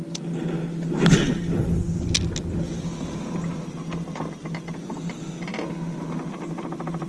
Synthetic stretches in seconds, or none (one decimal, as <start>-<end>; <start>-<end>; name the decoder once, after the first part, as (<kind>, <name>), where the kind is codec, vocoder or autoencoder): none

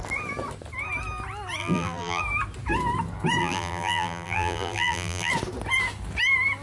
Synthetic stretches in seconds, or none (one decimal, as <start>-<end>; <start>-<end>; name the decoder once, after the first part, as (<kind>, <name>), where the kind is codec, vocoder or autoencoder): 1.6-2.2 (vocoder, BigVGAN v2); 3.4-5.3

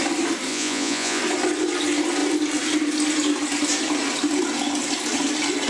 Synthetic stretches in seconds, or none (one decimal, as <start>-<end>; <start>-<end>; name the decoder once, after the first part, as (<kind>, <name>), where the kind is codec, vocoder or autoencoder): 0.5-1.2 (vocoder, Vocos)

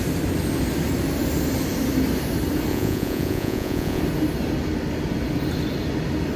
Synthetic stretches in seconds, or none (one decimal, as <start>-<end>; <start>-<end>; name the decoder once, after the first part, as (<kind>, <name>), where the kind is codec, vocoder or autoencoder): 2.7-4.0 (vocoder, Vocos)

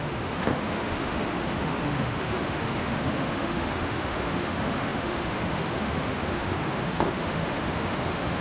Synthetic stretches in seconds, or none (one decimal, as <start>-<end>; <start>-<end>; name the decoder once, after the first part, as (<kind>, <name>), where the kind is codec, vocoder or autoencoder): 0.0-8.4 (autoencoder, DAC-VAE)